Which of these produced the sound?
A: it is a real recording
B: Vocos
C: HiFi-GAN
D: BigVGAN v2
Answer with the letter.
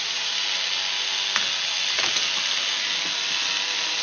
A